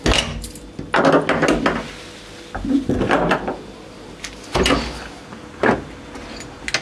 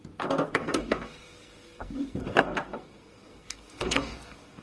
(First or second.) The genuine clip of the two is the first